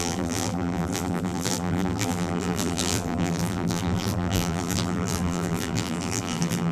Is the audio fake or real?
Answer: fake